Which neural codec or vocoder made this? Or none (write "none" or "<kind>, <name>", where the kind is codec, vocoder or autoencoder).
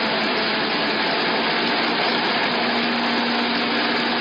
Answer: none